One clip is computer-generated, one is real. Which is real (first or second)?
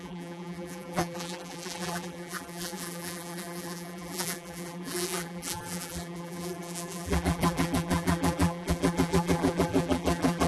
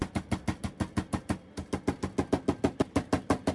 second